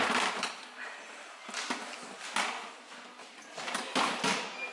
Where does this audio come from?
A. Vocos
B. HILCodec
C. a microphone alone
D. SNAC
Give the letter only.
C